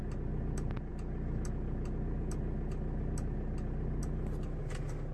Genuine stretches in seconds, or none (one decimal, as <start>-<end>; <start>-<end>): 0.0-5.1